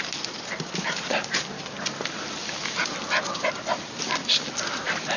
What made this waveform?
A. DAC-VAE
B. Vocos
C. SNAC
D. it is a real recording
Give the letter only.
D